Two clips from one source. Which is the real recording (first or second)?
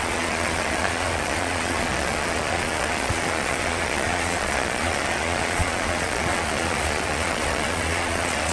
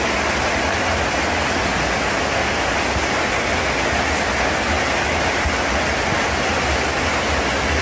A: second